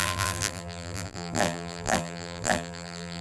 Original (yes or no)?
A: no